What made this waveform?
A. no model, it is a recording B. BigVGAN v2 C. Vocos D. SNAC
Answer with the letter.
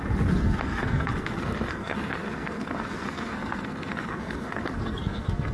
D